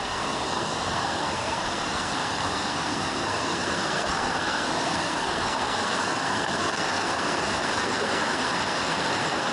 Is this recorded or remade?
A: remade